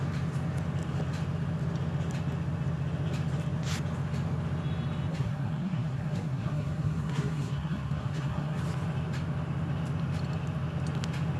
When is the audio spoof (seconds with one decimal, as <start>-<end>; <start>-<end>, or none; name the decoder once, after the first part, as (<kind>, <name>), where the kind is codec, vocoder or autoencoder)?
5.1-8.6 (codec, SNAC)